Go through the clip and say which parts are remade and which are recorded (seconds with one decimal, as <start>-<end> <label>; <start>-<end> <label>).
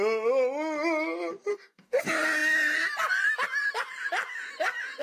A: 0.0-1.5 recorded; 1.5-2.0 remade; 2.0-5.0 recorded